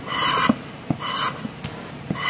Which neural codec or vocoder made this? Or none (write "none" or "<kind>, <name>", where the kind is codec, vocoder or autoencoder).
none